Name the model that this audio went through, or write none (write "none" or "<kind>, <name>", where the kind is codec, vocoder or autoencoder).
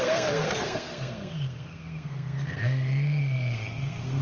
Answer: codec, SNAC